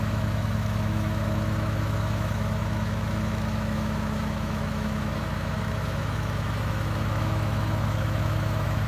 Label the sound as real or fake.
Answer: fake